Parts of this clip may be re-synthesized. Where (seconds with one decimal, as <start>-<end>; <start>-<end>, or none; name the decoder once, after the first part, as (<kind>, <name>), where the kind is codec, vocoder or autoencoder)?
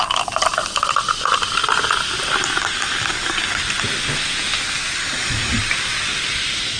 2.6-3.6 (codec, DAC); 5.0-5.6